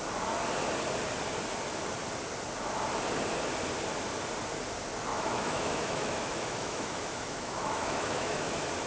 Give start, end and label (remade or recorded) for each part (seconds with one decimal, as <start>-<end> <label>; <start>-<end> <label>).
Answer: 0.0-5.1 recorded; 5.1-8.5 remade; 8.5-8.9 recorded